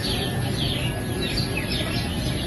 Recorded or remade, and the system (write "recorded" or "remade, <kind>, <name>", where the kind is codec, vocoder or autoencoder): remade, vocoder, BigVGAN v2